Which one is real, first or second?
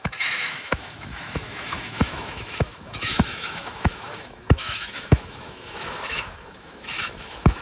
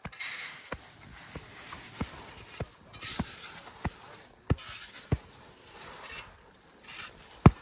second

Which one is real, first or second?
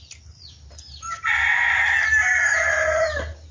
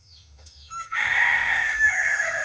first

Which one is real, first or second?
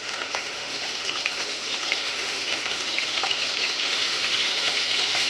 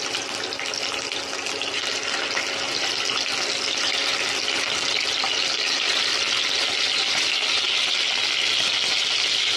second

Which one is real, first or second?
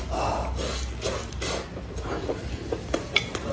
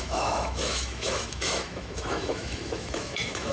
first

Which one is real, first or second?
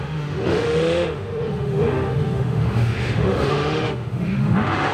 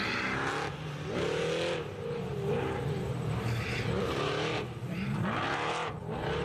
second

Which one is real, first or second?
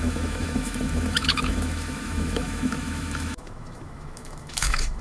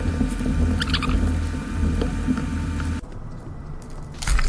second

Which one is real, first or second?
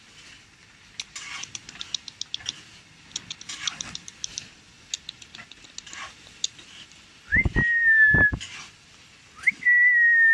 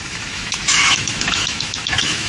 first